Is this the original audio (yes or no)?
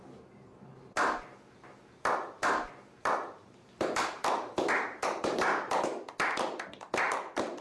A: no